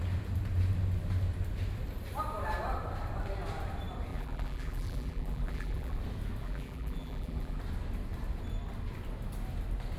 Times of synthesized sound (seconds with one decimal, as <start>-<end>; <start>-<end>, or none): 4.1-6.0; 6.4-7.6